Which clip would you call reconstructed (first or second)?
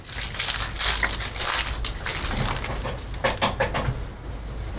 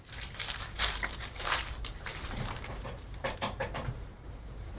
second